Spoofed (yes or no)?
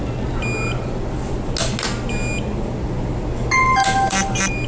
no